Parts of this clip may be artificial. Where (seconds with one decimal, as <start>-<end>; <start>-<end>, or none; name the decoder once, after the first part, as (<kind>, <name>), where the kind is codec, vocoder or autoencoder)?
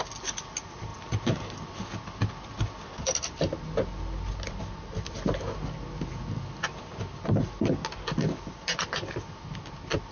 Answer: none